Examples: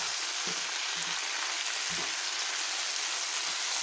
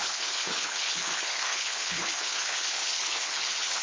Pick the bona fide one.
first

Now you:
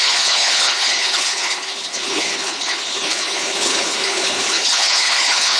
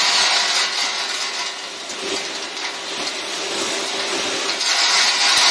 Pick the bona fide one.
second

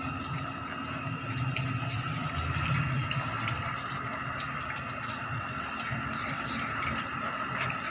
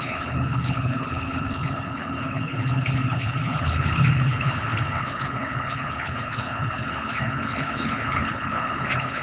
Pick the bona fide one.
first